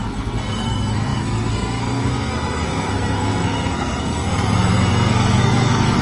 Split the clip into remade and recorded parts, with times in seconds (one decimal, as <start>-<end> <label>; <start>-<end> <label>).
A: 0.0-6.0 remade